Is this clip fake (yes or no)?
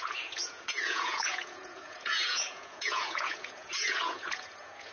yes